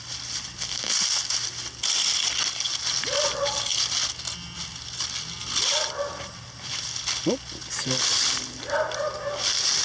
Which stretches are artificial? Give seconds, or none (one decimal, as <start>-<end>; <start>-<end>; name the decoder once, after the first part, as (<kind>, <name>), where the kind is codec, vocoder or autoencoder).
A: none